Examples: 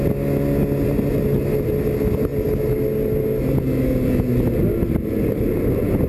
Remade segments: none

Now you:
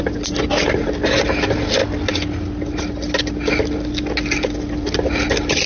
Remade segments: none

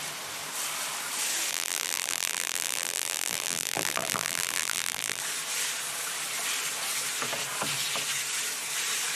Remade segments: 1.5-5.2 (vocoder, BigVGAN v2)